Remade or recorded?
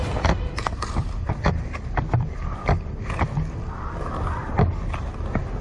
recorded